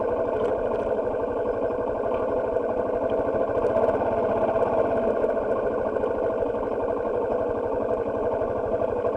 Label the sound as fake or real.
real